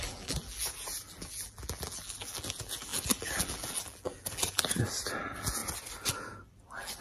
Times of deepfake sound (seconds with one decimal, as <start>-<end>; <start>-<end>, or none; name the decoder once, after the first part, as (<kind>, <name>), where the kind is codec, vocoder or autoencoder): 0.0-5.6 (vocoder, BigVGAN v2); 6.1-7.0